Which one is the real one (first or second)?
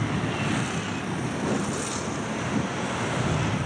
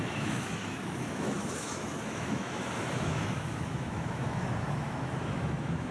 first